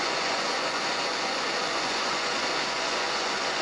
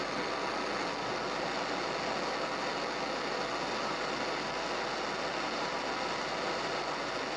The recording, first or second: second